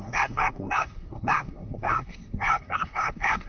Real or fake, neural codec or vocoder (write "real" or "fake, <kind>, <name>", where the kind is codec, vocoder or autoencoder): fake, codec, SNAC